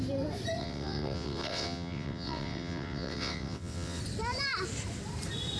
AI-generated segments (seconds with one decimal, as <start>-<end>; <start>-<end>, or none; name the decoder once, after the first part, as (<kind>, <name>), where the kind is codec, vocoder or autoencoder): 0.6-4.0 (vocoder, WaveNeXt)